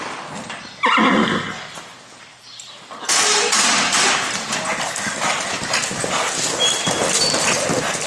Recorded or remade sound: recorded